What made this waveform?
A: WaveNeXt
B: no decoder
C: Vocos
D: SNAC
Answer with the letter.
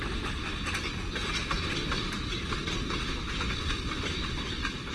B